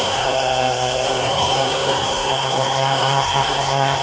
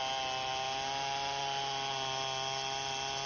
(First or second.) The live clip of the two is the second